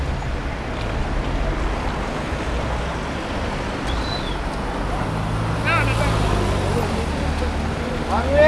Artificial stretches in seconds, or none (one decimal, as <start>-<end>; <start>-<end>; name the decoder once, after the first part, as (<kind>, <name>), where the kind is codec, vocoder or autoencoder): none